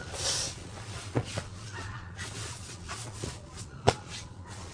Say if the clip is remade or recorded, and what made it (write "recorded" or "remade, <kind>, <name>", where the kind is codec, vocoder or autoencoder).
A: remade, vocoder, Vocos